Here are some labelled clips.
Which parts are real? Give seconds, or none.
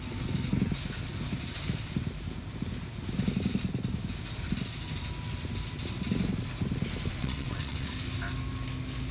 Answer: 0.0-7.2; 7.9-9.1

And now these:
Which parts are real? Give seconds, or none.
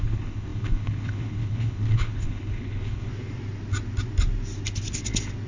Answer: 3.1-5.5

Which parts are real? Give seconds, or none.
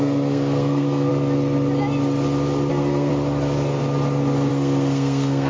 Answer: 1.1-2.7; 3.1-4.5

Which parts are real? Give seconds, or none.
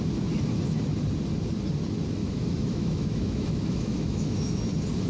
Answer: 0.0-2.2; 4.6-5.1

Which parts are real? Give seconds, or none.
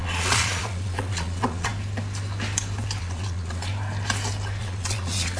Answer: 1.7-3.0; 3.7-4.6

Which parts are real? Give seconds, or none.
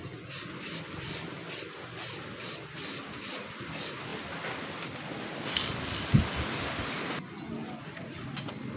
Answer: 0.0-8.8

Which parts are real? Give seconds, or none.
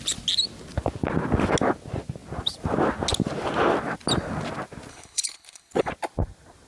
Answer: 0.0-4.9; 5.9-6.7